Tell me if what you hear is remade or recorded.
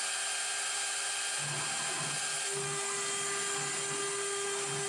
recorded